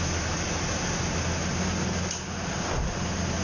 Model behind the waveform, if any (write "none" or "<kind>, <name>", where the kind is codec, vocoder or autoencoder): none